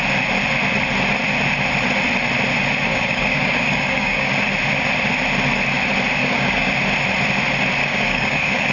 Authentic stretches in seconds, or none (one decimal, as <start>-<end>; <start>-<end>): 0.0-2.9; 4.3-6.2; 6.7-7.8